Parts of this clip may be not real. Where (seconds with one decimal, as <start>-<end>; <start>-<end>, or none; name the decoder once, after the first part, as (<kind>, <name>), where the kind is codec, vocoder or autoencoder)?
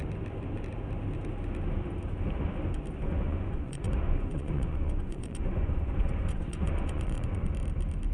3.0-7.5 (vocoder, Vocos)